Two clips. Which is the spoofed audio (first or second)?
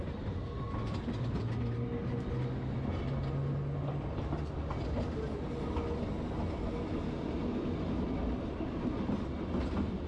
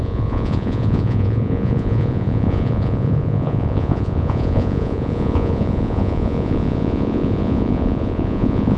second